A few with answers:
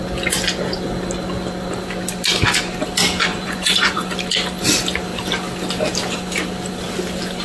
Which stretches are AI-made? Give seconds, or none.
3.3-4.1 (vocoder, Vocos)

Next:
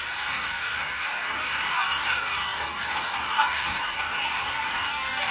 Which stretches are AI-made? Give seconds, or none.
0.0-5.3 (codec, DAC)

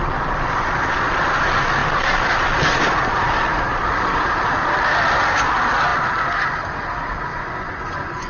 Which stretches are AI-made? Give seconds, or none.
7.3-8.3 (vocoder, Vocos)

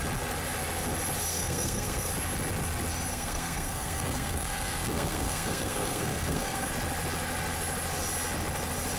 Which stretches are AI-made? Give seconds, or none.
1.3-2.1 (codec, SNAC); 3.1-6.7

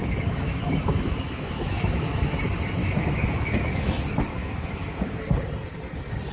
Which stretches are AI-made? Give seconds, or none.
0.0-2.4 (autoencoder, DAC-VAE); 2.8-3.9; 4.4-5.2

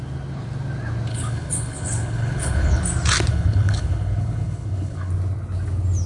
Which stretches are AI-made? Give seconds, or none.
1.1-2.8 (codec, HILCodec); 3.3-5.1

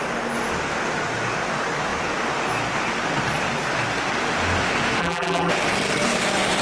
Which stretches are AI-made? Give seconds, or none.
5.0-5.5 (vocoder, BigVGAN v2)